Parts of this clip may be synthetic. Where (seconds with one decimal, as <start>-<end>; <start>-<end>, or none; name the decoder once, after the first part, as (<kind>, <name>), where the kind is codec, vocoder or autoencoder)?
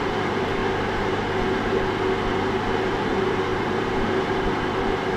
0.0-0.6 (vocoder, BigVGAN v2); 2.8-5.2